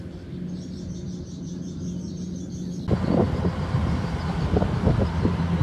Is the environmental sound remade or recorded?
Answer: recorded